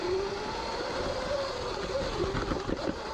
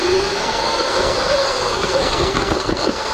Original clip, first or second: first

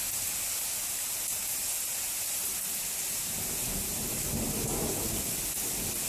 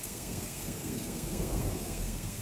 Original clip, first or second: first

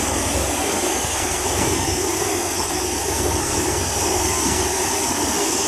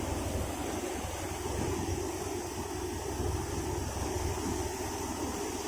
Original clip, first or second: second